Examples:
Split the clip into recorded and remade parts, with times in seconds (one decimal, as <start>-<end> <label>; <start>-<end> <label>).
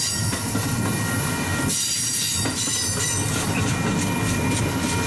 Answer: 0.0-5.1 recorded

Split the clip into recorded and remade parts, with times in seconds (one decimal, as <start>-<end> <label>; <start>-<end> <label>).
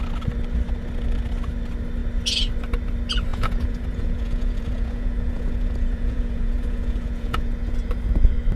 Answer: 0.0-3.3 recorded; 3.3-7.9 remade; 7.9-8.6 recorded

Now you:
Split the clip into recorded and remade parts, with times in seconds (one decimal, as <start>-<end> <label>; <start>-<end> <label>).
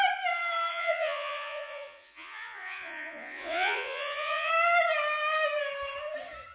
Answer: 0.0-0.7 recorded; 0.7-4.5 remade; 4.5-6.5 recorded